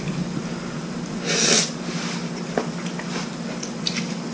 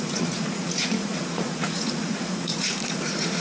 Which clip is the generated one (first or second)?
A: second